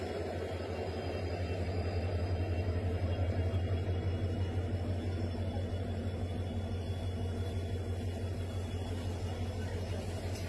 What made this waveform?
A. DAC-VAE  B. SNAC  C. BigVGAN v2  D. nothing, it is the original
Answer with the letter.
D